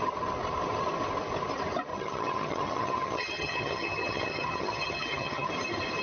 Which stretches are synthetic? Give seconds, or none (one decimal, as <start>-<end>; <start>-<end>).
1.9-5.5